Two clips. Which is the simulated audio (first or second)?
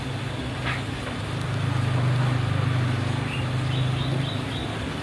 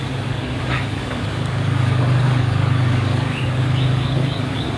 second